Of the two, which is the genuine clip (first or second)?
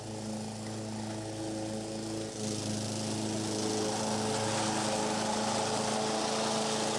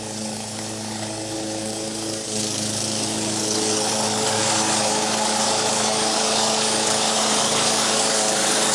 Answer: first